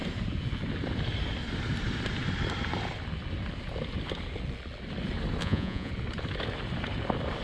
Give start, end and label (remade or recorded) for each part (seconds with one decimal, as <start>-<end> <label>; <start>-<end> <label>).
0.0-5.4 recorded; 5.4-5.9 remade; 5.9-7.4 recorded